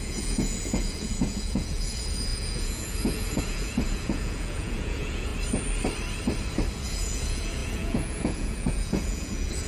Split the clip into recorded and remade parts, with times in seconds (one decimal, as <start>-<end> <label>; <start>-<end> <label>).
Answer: 0.0-5.3 remade; 5.3-6.7 recorded; 6.7-9.7 remade